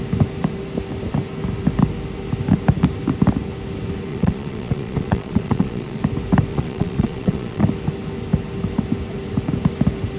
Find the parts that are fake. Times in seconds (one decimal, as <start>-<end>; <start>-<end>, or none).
4.1-6.0; 6.5-7.6